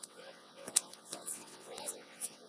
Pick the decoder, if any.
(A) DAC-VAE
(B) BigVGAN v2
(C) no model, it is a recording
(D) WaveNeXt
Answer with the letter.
D